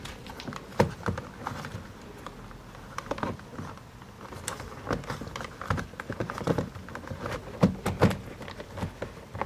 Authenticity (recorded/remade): recorded